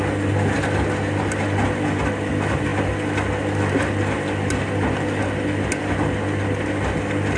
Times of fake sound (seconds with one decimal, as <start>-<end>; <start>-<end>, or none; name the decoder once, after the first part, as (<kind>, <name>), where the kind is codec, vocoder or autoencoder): none